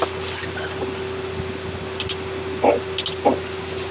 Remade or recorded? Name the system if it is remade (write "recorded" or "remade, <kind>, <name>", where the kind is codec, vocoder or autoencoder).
recorded